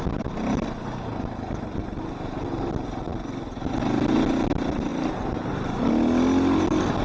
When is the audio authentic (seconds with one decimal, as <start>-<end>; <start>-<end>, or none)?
0.0-7.0